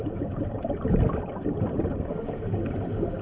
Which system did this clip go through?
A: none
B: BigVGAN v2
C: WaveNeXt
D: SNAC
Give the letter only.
A